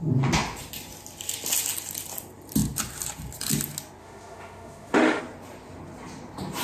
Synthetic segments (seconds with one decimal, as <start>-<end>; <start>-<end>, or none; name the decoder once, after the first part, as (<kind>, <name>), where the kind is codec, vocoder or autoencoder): 4.0-5.2 (autoencoder, DAC-VAE)